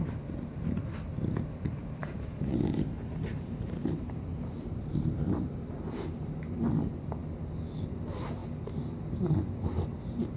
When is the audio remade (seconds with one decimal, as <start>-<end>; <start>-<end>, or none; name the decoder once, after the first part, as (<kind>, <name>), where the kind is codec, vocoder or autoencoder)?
2.0-5.5 (vocoder, BigVGAN v2)

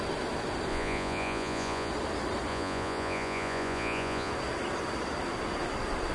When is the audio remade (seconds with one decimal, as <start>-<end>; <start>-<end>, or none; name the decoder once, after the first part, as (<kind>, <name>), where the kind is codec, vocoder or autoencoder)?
0.7-1.9 (vocoder, Vocos); 2.5-4.3

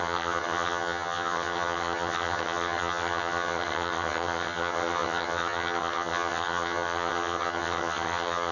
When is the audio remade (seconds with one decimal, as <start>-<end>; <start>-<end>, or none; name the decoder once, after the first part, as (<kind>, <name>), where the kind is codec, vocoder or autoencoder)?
0.0-8.5 (vocoder, HiFi-GAN)

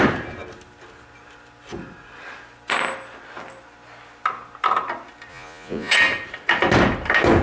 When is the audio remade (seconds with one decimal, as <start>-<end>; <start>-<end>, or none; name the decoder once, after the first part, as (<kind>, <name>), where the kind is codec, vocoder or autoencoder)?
5.3-5.9 (vocoder, Vocos)

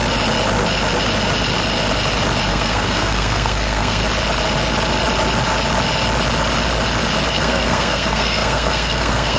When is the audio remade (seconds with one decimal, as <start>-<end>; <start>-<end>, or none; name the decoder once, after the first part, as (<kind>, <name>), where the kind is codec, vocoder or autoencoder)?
2.5-4.0 (codec, SNAC); 7.3-9.4

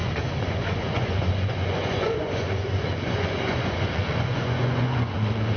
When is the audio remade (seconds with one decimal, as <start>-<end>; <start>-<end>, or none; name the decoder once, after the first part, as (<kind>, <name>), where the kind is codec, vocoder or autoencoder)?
0.0-5.6 (vocoder, Vocos)